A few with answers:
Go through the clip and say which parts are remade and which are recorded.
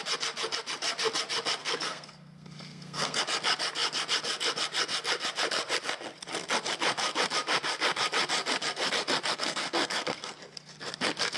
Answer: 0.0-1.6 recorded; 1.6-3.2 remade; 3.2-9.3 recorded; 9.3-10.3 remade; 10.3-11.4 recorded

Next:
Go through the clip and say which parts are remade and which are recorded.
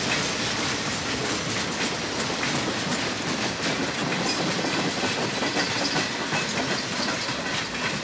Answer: 0.0-8.0 recorded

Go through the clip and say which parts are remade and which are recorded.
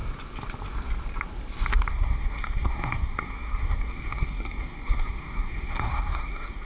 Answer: 0.0-1.9 recorded; 1.9-6.6 remade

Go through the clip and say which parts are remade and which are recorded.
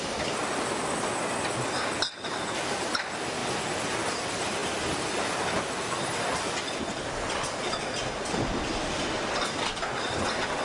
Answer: 0.0-10.6 recorded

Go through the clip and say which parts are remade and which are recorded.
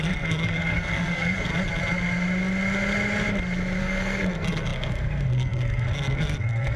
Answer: 0.0-1.5 remade; 1.5-3.8 recorded; 3.8-6.8 remade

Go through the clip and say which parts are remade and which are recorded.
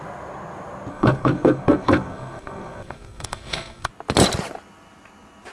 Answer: 0.0-0.9 recorded; 0.9-3.9 remade; 3.9-5.5 recorded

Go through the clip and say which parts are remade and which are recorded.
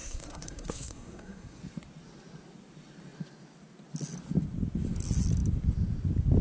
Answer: 0.0-1.6 remade; 1.6-6.4 recorded